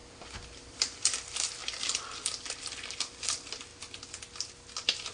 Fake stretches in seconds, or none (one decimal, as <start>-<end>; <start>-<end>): none